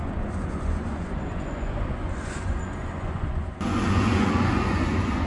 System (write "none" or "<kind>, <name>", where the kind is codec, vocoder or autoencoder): vocoder, Vocos